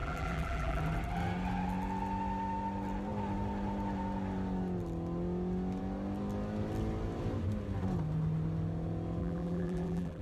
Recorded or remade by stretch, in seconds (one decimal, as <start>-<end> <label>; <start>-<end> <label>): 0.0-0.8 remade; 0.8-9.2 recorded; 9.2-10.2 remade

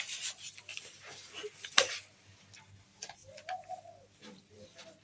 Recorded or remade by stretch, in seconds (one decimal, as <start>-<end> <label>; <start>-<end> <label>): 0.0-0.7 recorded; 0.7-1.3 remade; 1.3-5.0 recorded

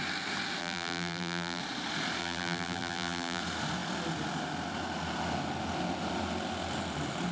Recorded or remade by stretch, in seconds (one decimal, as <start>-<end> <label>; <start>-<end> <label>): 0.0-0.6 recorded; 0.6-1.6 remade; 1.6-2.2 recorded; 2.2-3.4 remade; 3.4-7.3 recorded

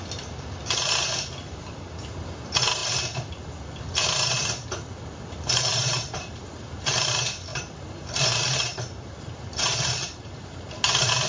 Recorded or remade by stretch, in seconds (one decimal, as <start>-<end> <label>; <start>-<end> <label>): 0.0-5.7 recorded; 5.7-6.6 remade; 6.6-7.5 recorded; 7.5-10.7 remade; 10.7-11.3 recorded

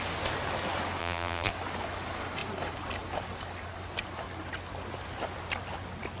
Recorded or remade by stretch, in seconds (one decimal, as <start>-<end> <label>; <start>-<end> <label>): 0.0-1.0 recorded; 1.0-1.5 remade; 1.5-6.2 recorded

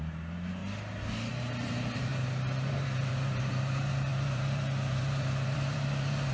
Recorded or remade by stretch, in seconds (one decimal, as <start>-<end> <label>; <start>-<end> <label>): 0.0-0.6 remade; 0.6-1.3 recorded; 1.3-6.3 remade

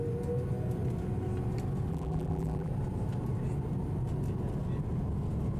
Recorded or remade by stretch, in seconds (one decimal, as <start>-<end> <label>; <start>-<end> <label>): 0.0-1.9 recorded; 1.9-2.7 remade; 2.7-5.6 recorded

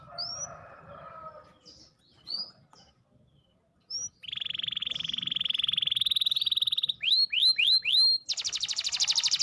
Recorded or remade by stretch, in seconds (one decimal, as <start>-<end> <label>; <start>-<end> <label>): 0.0-9.4 recorded